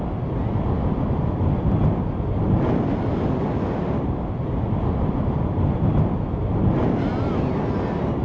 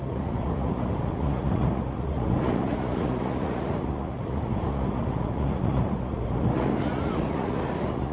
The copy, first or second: second